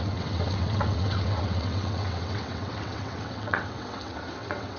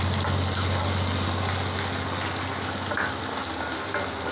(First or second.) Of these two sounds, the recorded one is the second